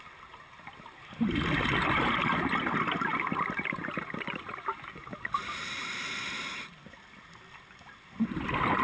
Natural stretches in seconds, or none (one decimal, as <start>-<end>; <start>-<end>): 0.0-8.8